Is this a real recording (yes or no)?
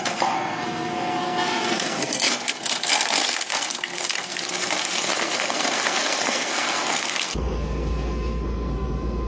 no